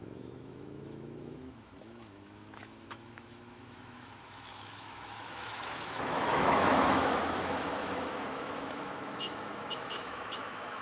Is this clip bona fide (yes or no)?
no